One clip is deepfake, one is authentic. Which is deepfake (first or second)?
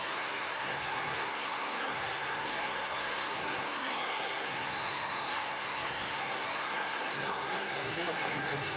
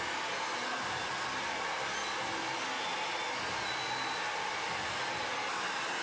first